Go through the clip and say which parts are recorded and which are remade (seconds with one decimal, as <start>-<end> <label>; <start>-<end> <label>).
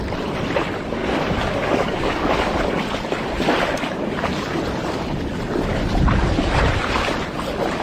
0.0-1.0 recorded; 1.0-2.3 remade; 2.3-7.8 recorded